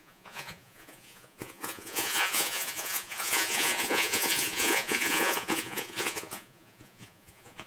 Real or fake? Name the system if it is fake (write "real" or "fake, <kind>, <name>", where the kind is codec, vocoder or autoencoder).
fake, vocoder, Vocos